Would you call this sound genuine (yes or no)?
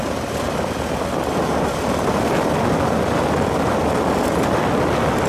yes